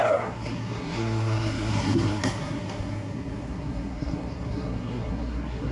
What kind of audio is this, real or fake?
fake